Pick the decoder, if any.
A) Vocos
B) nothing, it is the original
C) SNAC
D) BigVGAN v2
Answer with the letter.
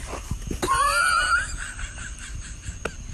B